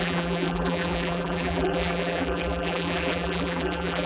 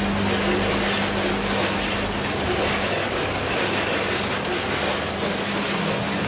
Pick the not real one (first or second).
first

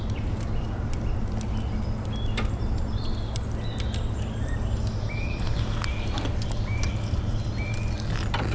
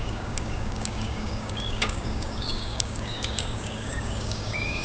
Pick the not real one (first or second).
second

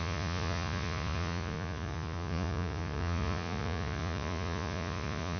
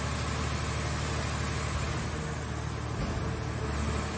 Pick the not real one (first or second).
first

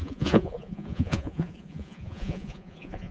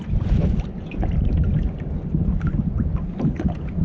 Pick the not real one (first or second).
first